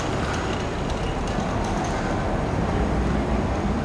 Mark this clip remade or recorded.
recorded